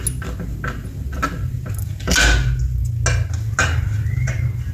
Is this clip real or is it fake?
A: real